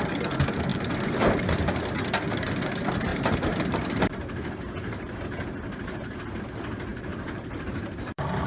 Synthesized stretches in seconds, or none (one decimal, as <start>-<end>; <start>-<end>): 0.7-1.7; 3.1-6.4; 6.9-8.5